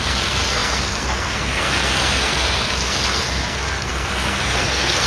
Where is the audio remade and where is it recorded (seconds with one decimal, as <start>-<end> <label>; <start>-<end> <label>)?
0.0-5.1 remade